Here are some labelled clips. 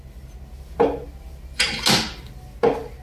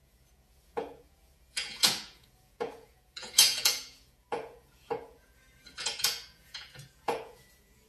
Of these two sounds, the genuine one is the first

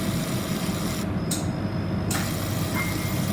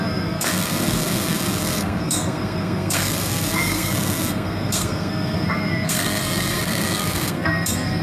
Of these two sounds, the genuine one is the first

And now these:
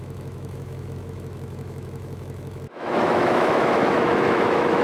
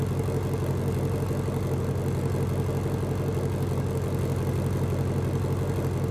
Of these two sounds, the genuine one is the second